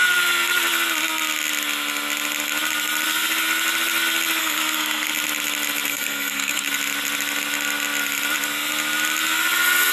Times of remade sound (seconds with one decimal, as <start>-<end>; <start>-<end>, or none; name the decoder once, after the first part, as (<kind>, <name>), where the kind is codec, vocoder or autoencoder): 4.4-5.1 (codec, SNAC); 5.9-6.7